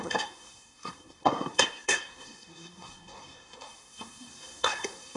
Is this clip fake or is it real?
fake